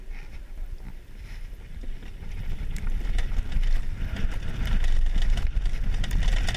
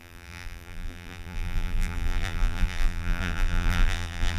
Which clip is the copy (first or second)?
second